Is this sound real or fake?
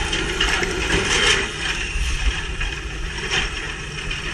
fake